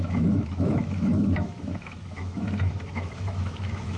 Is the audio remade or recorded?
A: remade